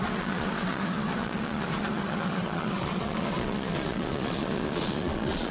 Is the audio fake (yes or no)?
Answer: yes